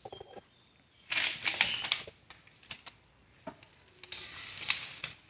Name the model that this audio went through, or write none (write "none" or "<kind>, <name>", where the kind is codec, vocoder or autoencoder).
none